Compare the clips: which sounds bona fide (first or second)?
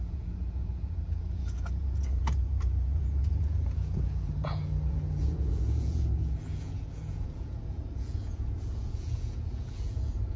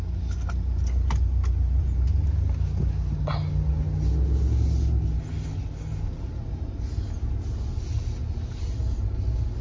second